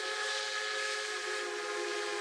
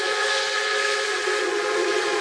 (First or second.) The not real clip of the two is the second